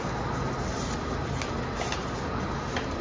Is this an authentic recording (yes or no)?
yes